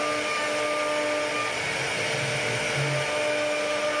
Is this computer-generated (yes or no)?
no